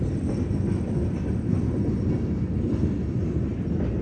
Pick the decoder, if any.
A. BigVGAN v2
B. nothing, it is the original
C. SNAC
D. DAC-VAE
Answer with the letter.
B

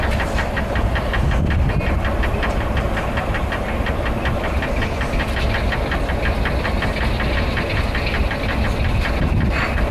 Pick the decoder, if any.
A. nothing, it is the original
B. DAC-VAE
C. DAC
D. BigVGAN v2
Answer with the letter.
A